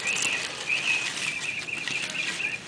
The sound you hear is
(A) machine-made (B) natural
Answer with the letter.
B